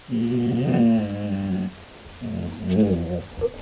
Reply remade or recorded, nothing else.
recorded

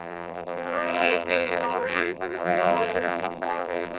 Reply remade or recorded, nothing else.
remade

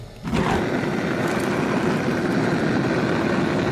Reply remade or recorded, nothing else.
recorded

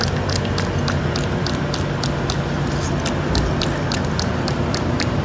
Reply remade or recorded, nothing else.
recorded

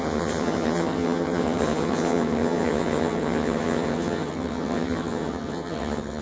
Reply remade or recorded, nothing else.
remade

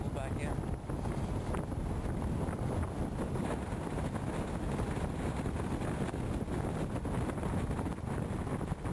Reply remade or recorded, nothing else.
recorded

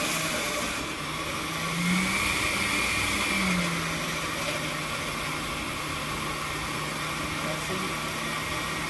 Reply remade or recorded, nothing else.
recorded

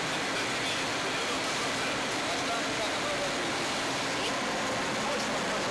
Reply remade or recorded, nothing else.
recorded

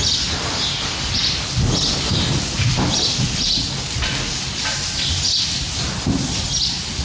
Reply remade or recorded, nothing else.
recorded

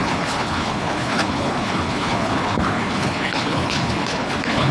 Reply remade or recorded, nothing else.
remade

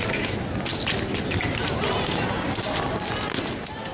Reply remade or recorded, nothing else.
recorded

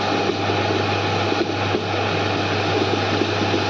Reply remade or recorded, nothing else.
recorded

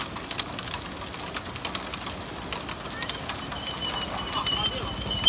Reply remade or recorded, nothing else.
recorded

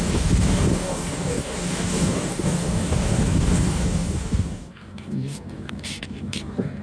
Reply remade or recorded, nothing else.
remade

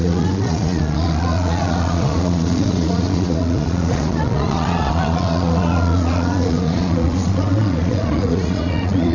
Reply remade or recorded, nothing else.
remade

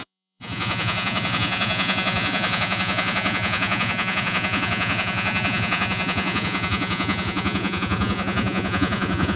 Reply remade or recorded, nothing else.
remade